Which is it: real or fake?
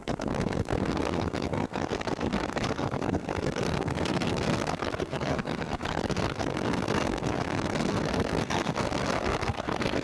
fake